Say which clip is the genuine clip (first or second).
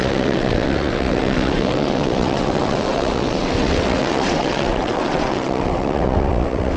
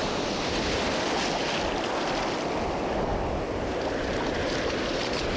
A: second